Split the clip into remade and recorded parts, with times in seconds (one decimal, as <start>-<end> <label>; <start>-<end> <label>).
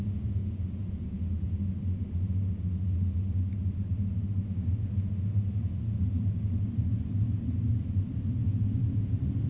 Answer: 0.0-0.4 recorded; 0.4-1.5 remade; 1.5-8.4 recorded; 8.4-9.1 remade; 9.1-9.5 recorded